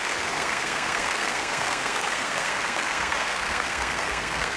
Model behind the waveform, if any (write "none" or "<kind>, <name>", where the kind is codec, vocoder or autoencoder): codec, SNAC